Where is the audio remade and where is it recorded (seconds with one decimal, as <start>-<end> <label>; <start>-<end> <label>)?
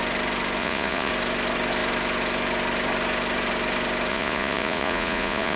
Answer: 0.0-0.6 recorded; 0.6-1.1 remade; 1.1-4.1 recorded; 4.1-5.6 remade